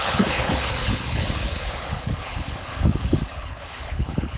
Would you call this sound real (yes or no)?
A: no